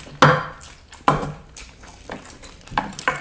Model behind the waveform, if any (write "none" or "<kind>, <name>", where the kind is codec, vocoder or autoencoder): none